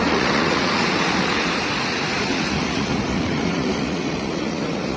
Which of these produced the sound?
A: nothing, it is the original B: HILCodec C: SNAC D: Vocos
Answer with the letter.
D